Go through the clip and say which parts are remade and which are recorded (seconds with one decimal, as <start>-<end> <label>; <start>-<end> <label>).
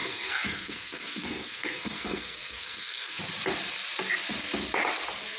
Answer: 0.0-3.2 remade; 3.2-5.4 recorded